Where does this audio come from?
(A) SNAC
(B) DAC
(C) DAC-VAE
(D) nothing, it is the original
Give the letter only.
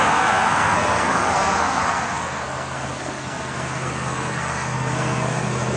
A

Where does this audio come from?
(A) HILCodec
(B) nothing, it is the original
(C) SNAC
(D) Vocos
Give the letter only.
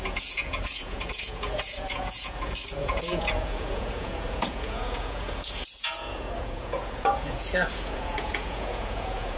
D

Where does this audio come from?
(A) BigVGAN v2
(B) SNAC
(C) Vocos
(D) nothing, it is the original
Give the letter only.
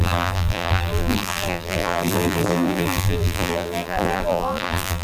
A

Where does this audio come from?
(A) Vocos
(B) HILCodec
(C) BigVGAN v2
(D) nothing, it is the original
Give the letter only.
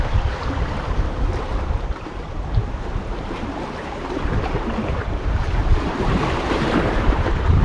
C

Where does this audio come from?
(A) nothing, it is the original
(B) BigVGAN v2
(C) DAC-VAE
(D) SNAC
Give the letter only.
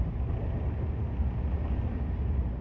A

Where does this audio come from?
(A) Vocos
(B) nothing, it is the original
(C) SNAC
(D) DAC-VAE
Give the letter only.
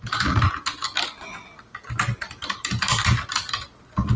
B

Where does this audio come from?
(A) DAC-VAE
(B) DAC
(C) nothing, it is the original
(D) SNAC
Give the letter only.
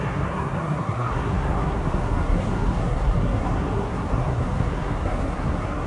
D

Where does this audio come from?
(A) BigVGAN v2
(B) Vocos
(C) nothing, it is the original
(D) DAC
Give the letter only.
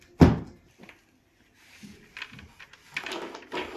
C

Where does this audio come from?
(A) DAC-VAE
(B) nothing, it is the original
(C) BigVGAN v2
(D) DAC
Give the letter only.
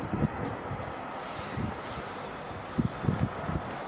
B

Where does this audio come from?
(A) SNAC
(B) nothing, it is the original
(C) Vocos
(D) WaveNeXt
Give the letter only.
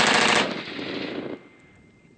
B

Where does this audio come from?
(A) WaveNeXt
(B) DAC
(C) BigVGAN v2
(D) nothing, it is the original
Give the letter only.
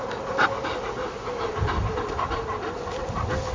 C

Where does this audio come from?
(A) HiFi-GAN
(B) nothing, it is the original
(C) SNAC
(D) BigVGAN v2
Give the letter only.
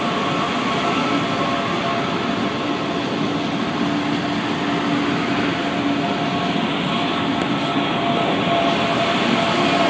B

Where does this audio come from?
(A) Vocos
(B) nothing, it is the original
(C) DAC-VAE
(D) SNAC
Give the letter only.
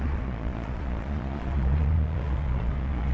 A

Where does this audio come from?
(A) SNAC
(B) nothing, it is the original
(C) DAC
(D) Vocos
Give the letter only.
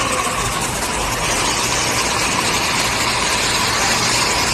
B